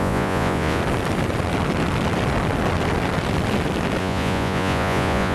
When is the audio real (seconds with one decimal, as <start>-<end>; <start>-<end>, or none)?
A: 0.8-4.0